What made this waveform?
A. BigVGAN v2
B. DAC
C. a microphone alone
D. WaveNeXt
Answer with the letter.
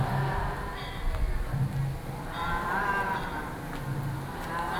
C